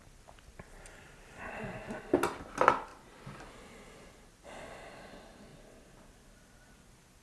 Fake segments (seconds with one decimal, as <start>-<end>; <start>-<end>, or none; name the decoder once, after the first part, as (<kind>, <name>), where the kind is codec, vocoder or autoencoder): none